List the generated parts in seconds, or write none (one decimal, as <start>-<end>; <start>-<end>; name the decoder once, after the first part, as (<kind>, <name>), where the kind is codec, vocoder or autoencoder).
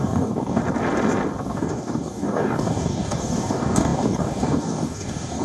0.0-0.6 (codec, DAC); 1.4-5.4